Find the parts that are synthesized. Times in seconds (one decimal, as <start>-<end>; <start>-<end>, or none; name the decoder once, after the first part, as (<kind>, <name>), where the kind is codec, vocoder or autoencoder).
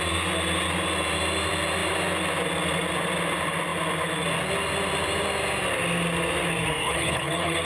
6.8-7.6 (codec, HILCodec)